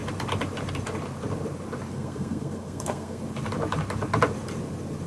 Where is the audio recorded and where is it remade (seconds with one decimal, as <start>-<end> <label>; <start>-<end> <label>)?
0.0-1.9 recorded; 1.9-3.2 remade; 3.2-5.1 recorded